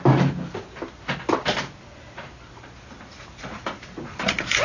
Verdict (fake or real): real